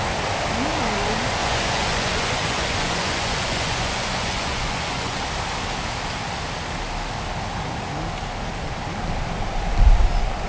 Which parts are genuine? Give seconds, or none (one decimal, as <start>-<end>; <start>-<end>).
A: 0.0-1.4; 5.2-10.5